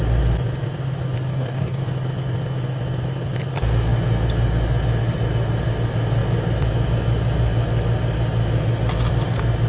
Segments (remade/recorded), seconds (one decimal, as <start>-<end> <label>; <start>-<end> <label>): 0.0-1.3 recorded; 1.3-1.8 remade; 1.8-9.7 recorded